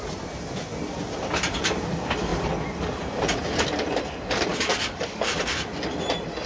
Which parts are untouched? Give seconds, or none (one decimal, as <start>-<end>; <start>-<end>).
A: 0.0-4.5; 5.3-6.5